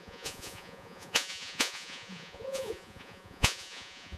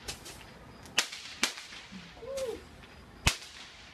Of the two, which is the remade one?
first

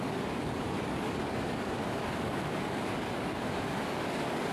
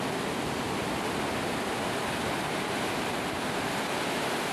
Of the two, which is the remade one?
first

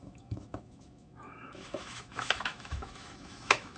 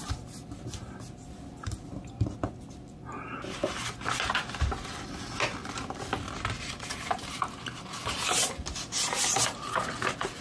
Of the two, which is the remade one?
first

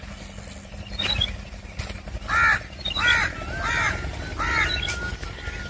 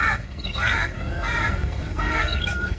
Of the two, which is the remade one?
second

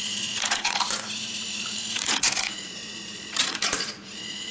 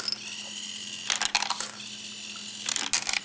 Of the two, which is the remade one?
first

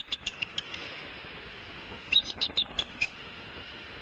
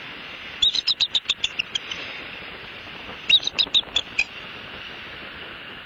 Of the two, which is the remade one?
first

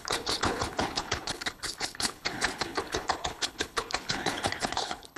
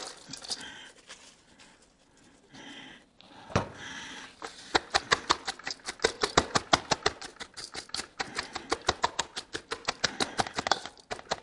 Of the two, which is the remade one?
first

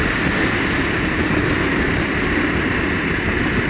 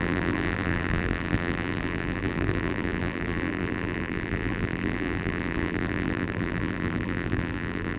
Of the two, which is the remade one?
second